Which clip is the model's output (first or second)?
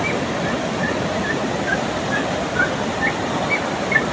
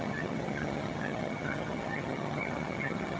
second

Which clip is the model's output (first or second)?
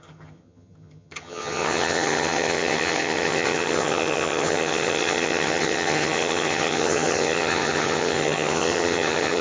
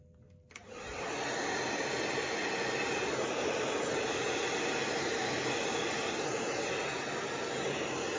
first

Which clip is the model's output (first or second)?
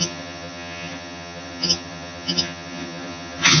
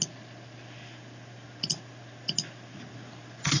first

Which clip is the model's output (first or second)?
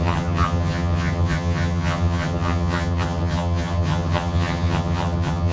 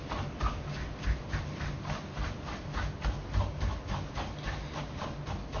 first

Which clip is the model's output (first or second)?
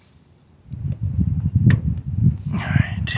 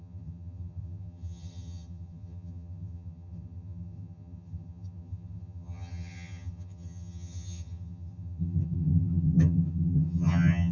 second